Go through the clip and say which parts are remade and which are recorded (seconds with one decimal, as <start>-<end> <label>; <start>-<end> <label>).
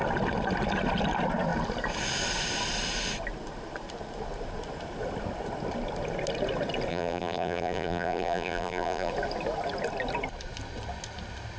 0.0-6.9 recorded; 6.9-9.1 remade; 9.1-11.6 recorded